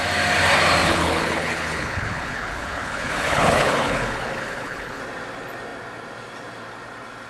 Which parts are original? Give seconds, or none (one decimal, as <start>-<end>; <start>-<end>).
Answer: 0.0-0.8; 5.0-7.3